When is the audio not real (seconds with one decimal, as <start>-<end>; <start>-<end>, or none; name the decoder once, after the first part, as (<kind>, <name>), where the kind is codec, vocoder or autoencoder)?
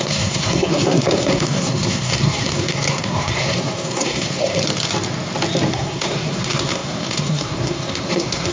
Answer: 0.0-4.6 (codec, SNAC); 5.7-8.5